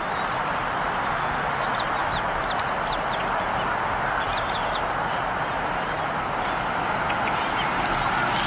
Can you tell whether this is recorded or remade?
recorded